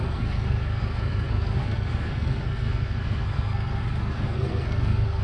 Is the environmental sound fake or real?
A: fake